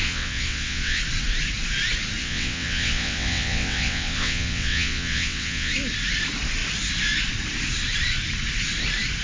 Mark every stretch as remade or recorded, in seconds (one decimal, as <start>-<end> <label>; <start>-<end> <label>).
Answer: 0.0-1.0 remade; 1.0-2.2 recorded; 2.2-5.7 remade; 5.7-9.2 recorded